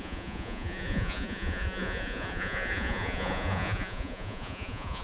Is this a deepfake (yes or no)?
yes